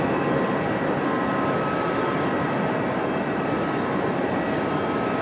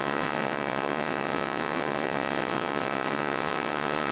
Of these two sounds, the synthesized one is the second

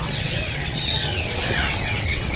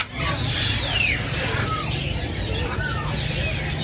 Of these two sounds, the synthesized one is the first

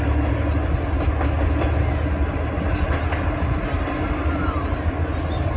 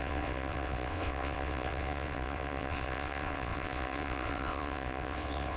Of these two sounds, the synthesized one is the second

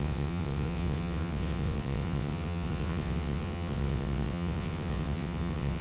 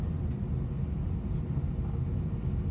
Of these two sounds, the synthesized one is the first